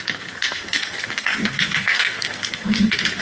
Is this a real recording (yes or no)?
no